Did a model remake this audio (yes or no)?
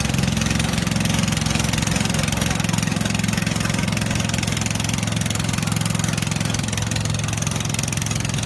no